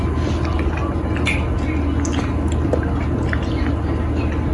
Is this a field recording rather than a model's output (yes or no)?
yes